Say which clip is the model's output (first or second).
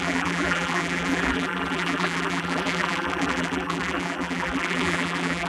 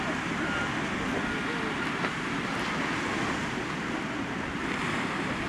first